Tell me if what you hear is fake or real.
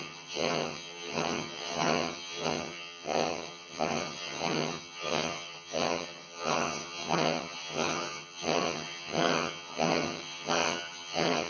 fake